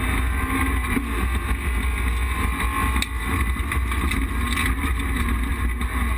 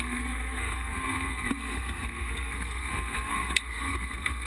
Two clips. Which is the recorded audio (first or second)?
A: first